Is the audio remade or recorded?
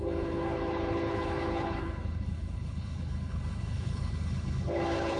remade